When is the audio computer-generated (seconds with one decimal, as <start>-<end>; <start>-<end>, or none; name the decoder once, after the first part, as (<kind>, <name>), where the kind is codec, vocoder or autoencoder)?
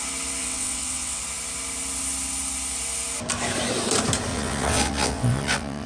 0.4-1.2 (vocoder, WaveNeXt); 4.3-5.9